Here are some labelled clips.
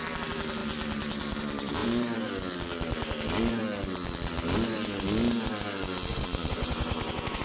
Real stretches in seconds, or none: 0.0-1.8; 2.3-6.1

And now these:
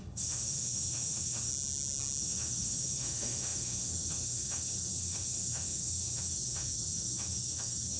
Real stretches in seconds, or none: 1.5-2.2

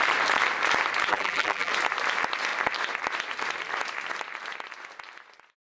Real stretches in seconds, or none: 0.0-1.1; 1.7-5.7

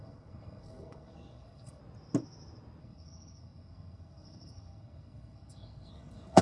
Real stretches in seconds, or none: 1.8-2.8

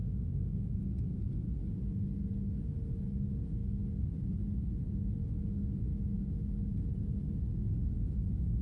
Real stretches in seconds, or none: 0.8-8.6

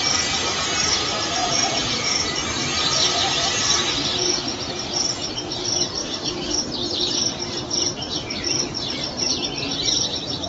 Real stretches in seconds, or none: 0.0-6.0; 6.6-10.5